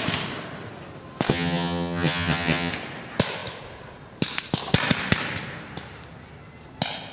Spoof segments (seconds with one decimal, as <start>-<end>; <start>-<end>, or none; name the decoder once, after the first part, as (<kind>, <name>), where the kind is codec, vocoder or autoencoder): 1.3-2.7 (vocoder, HiFi-GAN)